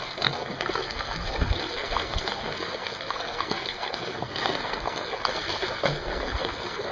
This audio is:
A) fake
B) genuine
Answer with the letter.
A